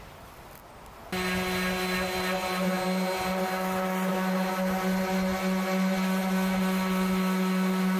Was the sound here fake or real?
real